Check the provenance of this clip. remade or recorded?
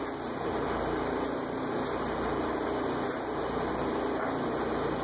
remade